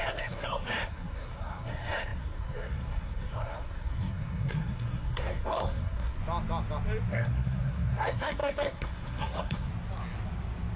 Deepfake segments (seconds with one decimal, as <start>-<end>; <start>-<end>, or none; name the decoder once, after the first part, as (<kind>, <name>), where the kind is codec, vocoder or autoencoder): 0.0-6.2 (codec, SNAC); 7.1-9.7